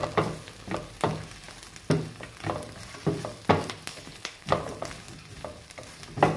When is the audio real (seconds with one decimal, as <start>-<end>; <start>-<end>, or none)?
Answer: 0.0-3.9; 4.5-6.4